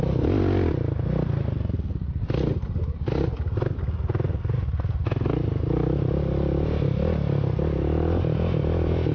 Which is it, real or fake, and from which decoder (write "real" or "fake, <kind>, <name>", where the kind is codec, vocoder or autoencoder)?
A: real